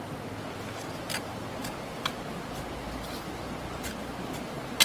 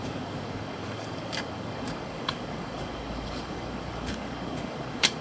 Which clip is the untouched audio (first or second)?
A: first